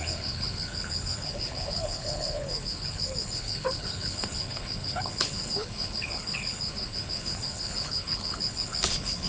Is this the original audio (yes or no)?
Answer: no